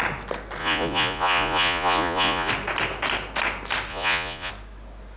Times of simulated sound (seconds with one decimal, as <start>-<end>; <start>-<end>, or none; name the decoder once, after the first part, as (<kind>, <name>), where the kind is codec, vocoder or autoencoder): 0.6-2.5 (vocoder, Vocos); 3.9-4.5